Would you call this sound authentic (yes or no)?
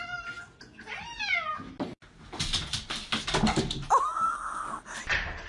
yes